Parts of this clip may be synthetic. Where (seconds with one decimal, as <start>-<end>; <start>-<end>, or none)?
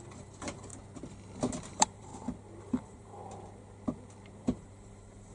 0.0-0.7; 1.7-2.1; 2.7-3.2; 4.4-5.3